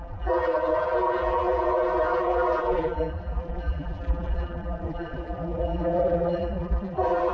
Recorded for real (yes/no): no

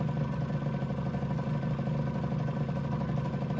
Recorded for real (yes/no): yes